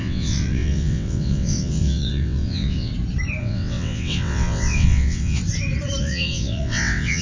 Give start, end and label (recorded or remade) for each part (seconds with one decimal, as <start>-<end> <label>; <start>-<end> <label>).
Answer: 0.0-2.9 remade; 2.9-3.4 recorded; 3.4-5.4 remade; 5.4-6.0 recorded; 6.0-7.2 remade